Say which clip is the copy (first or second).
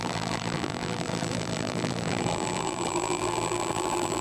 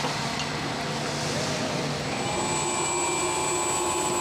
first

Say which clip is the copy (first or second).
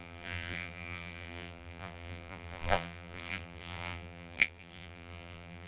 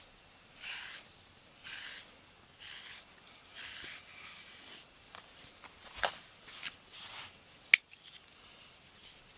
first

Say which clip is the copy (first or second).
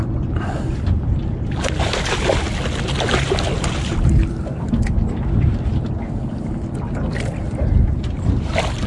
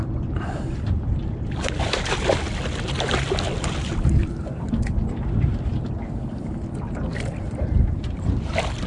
second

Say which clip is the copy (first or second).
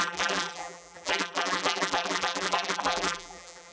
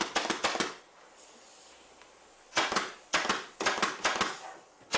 first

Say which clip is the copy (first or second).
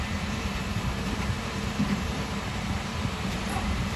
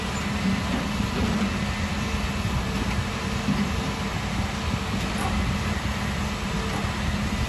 first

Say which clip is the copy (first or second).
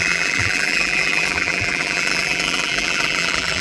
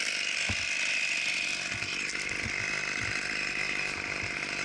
first